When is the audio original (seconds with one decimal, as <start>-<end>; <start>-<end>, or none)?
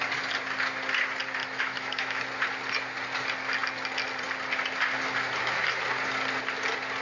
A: 0.0-1.4; 2.2-7.0